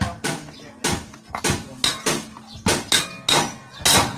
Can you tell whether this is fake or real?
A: real